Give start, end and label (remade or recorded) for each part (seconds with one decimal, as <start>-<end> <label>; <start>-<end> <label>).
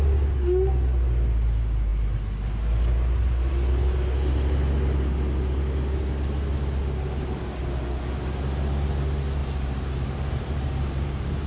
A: 0.0-9.4 recorded; 9.4-11.5 remade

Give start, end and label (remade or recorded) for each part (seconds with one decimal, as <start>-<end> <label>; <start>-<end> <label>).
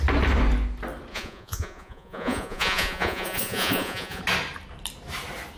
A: 0.0-1.1 recorded; 1.1-4.2 remade; 4.2-5.6 recorded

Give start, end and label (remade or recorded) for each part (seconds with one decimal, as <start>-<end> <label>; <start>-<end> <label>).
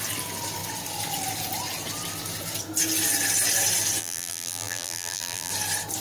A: 0.0-4.0 recorded; 4.0-5.5 remade; 5.5-6.0 recorded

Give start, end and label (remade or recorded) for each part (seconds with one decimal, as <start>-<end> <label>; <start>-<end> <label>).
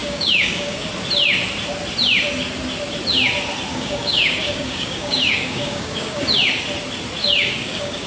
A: 0.0-0.9 remade; 0.9-3.7 recorded; 3.7-6.2 remade; 6.2-7.2 recorded; 7.2-8.1 remade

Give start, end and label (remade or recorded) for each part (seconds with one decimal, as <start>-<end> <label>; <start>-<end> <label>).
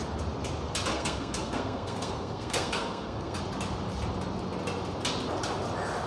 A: 0.0-0.9 recorded; 0.9-3.4 remade; 3.4-6.1 recorded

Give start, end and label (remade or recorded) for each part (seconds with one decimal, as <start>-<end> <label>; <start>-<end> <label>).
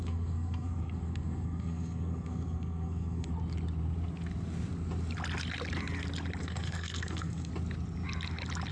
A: 0.0-3.3 remade; 3.3-6.4 recorded; 6.4-7.5 remade; 7.5-8.7 recorded